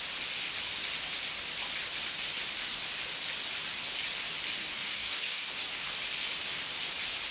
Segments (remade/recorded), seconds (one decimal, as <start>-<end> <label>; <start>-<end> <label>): 0.0-4.6 recorded; 4.6-5.5 remade; 5.5-7.3 recorded